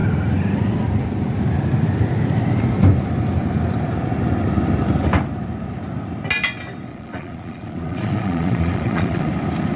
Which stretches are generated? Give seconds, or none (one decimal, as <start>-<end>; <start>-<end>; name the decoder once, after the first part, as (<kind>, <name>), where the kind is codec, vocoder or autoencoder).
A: 6.9-9.3 (vocoder, Vocos)